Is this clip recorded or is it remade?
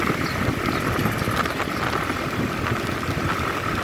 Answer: recorded